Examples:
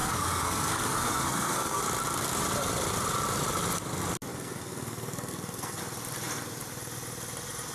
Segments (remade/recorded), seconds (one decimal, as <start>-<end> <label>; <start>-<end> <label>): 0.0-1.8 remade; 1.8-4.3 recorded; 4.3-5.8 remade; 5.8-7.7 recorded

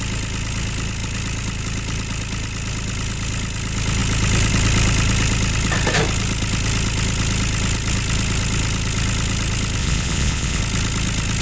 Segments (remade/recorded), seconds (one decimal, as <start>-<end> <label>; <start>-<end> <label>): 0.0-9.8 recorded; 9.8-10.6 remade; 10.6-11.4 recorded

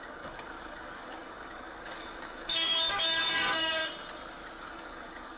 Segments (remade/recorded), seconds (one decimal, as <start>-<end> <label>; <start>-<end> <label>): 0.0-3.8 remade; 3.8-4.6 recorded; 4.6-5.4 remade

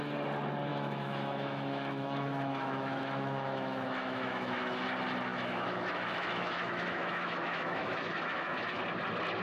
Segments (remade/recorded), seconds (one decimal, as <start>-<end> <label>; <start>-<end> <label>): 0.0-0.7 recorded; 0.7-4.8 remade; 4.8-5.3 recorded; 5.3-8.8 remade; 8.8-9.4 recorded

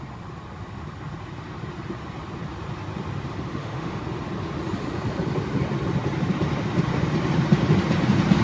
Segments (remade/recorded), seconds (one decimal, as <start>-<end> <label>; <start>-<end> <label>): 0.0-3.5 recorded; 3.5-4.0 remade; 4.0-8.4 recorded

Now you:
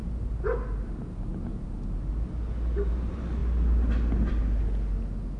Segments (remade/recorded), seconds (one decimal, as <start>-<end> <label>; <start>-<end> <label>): 0.0-5.4 recorded

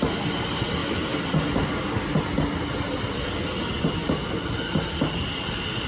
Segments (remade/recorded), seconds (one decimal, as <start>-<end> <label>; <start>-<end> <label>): 0.0-5.9 recorded